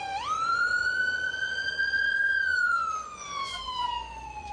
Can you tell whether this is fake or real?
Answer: fake